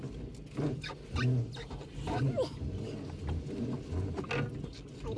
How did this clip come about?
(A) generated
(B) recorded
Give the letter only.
B